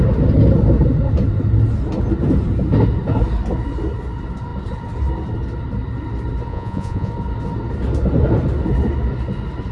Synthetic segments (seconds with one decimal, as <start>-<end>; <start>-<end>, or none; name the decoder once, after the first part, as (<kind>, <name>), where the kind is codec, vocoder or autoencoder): 6.5-7.1 (vocoder, Vocos)